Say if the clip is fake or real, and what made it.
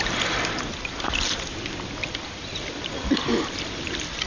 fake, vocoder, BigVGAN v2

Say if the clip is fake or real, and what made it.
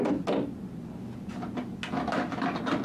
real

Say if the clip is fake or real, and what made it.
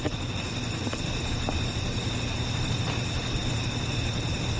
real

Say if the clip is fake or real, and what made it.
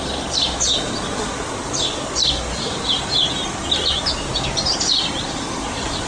real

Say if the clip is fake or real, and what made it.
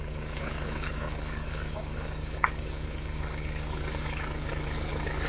fake, codec, DAC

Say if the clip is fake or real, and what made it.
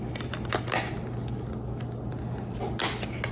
real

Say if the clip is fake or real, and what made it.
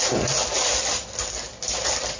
real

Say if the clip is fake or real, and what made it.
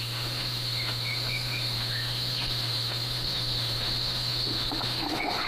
fake, autoencoder, DAC-VAE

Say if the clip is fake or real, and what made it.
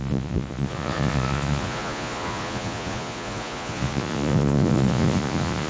fake, vocoder, Vocos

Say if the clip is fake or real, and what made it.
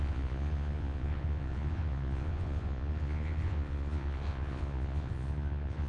fake, vocoder, Vocos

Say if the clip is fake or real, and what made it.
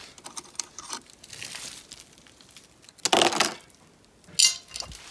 real